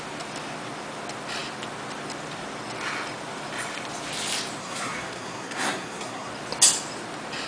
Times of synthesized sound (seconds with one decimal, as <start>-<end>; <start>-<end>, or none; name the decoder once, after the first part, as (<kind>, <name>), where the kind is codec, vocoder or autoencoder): 4.6-6.3 (codec, SNAC)